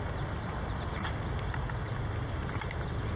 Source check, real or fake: real